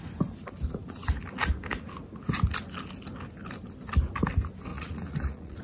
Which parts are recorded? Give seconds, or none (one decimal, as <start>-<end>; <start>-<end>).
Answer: 0.0-4.7